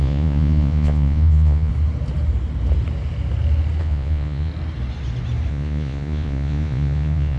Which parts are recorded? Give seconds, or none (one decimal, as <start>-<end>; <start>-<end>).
1.7-3.8; 4.5-5.5